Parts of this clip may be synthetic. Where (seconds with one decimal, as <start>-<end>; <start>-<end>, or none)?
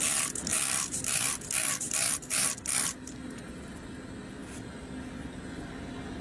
0.5-2.1